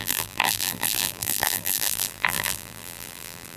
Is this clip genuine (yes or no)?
no